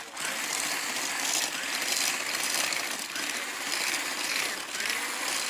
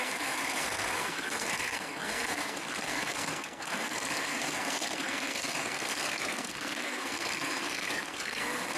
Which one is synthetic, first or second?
second